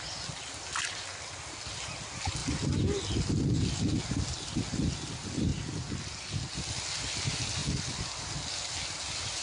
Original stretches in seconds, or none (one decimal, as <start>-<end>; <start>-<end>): 0.0-9.4